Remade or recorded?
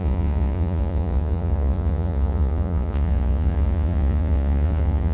remade